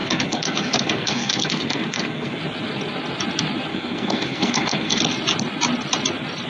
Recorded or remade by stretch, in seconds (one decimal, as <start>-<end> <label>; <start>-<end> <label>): 0.0-2.4 remade; 2.4-3.7 recorded; 3.7-5.0 remade; 5.0-6.5 recorded